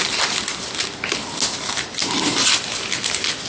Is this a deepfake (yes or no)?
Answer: no